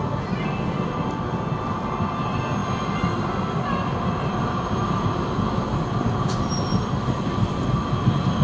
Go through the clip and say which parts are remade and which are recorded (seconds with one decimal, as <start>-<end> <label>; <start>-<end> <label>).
0.0-2.6 recorded; 2.6-7.6 remade; 7.6-8.4 recorded